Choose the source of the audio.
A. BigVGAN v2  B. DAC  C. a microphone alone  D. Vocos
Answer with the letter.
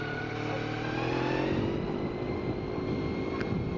C